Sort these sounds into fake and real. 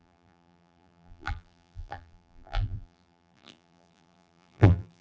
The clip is fake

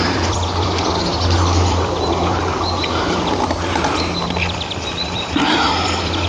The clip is fake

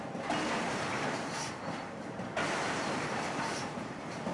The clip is fake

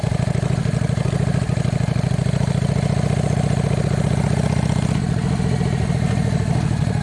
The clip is real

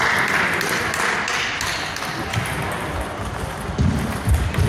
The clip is real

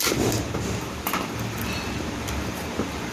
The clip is fake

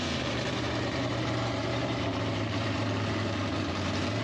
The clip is fake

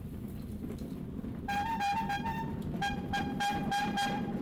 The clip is fake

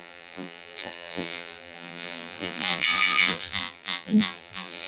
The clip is fake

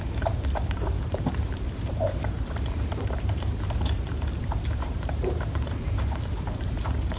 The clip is fake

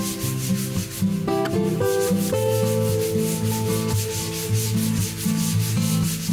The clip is real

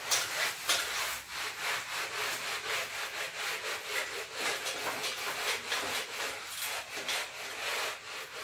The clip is real